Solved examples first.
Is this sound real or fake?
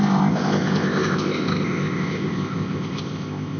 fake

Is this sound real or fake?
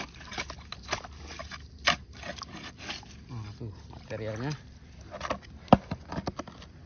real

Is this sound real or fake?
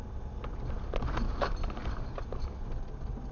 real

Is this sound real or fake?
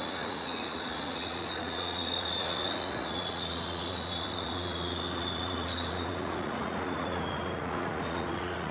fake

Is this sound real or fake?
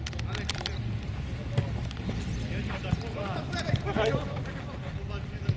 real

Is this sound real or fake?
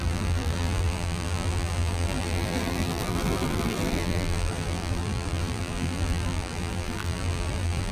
fake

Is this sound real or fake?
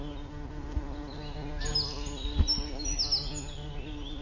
real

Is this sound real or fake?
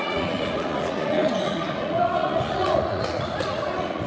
fake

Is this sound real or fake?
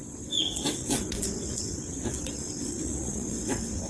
fake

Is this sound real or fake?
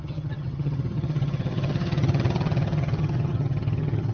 fake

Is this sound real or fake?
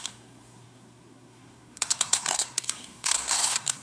fake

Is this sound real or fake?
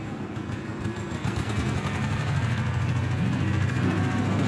fake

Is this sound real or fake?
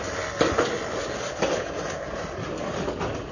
real